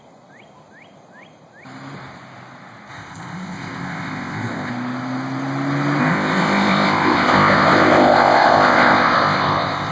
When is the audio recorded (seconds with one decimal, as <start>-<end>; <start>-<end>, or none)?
0.0-2.9; 4.7-6.0